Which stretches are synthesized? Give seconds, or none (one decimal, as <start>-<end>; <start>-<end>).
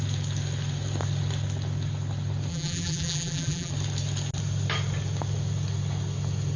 2.5-3.7